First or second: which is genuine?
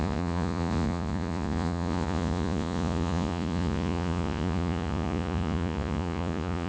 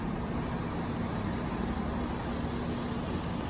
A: second